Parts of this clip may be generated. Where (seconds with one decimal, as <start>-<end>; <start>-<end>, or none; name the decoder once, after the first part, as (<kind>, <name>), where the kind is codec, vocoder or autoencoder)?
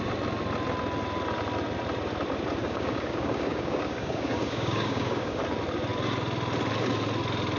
2.6-5.4 (codec, DAC)